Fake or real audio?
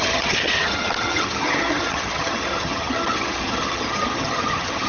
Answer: fake